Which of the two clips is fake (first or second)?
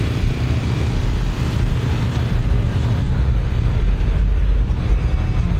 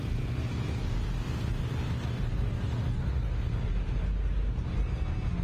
first